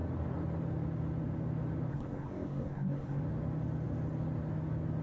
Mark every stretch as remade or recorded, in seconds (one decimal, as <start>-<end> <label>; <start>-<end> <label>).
0.0-1.9 recorded; 1.9-3.2 remade; 3.2-5.0 recorded